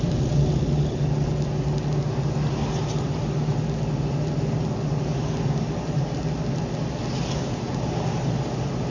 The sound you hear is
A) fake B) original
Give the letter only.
B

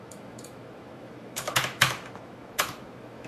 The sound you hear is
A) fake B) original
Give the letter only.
A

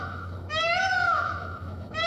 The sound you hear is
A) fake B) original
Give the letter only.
A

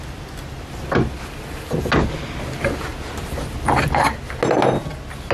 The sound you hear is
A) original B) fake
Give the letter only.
A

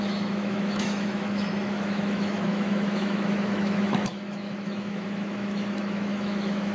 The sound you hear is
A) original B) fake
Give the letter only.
B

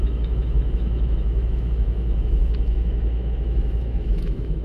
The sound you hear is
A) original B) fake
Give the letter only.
B